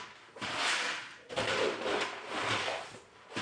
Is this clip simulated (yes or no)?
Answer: no